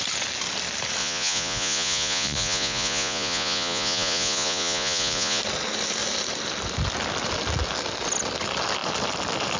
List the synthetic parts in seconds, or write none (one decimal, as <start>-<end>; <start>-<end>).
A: 1.0-5.4